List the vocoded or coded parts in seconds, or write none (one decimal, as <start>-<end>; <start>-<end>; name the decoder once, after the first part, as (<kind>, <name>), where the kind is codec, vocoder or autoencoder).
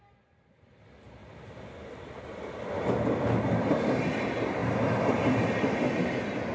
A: 4.6-5.4 (vocoder, BigVGAN v2)